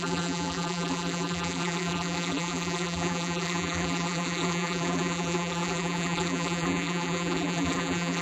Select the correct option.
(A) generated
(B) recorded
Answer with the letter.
A